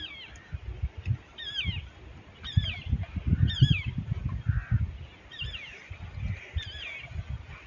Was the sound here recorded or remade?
recorded